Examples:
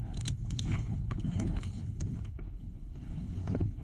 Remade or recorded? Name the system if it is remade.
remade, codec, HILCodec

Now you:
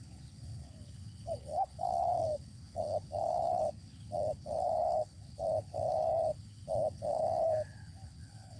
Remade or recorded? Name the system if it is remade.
remade, codec, HILCodec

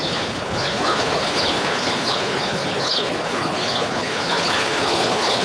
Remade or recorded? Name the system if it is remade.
remade, codec, HILCodec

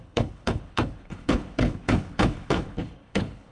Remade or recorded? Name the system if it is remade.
remade, codec, HILCodec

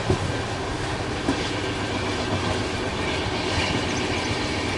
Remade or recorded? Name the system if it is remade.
recorded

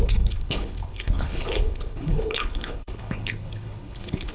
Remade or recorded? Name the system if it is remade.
remade, codec, HILCodec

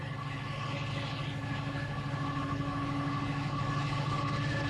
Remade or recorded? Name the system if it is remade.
remade, codec, HILCodec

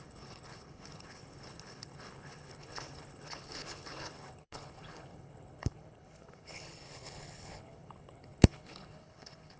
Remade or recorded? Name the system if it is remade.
remade, codec, HILCodec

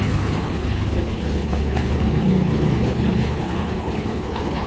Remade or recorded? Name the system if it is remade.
remade, codec, HILCodec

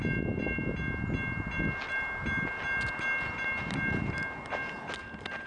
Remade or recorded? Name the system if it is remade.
recorded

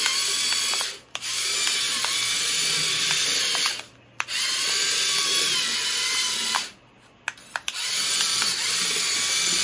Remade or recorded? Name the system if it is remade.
recorded